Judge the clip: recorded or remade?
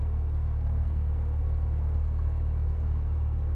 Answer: remade